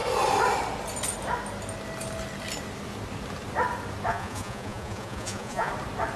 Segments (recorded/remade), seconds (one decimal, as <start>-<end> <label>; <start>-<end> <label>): 0.0-4.1 recorded; 4.1-5.7 remade; 5.7-6.2 recorded

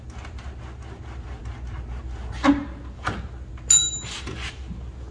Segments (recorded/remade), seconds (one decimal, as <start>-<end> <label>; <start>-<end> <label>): 0.0-5.1 recorded

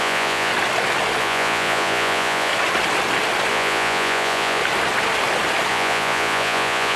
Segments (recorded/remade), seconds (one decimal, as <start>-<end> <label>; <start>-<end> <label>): 0.0-0.5 remade; 0.5-1.2 recorded; 1.2-2.5 remade; 2.5-3.5 recorded; 3.5-4.6 remade; 4.6-5.7 recorded; 5.7-7.0 remade

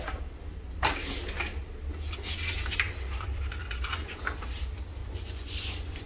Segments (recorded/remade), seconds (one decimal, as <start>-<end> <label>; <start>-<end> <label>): 0.0-3.6 recorded; 3.6-4.2 remade; 4.2-5.0 recorded; 5.0-6.1 remade

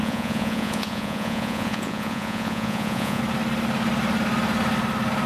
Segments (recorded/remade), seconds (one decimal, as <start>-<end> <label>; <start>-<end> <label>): 0.0-3.2 remade; 3.2-5.3 recorded